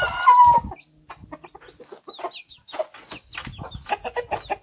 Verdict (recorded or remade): recorded